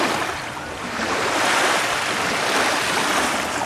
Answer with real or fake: real